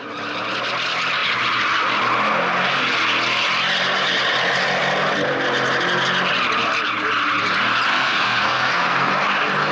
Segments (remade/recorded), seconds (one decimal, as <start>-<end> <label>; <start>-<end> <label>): 0.0-7.9 recorded; 7.9-9.1 remade; 9.1-9.7 recorded